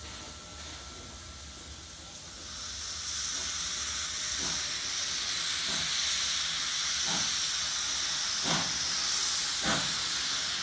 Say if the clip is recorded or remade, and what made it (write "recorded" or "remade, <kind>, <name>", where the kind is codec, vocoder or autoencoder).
recorded